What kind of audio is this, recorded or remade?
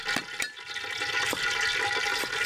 recorded